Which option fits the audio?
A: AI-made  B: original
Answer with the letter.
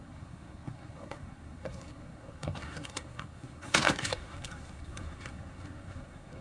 A